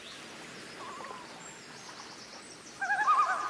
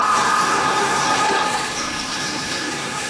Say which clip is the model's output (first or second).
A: second